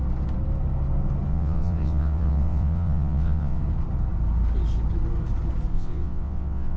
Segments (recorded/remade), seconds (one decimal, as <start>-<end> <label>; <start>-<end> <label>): 0.0-1.3 recorded; 1.3-3.6 remade; 3.6-5.7 recorded; 5.7-6.8 remade